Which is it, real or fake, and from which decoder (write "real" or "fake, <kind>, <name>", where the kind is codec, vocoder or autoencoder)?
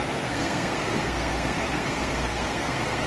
fake, codec, SNAC